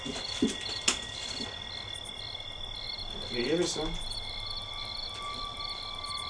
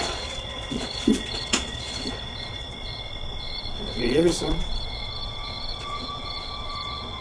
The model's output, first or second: second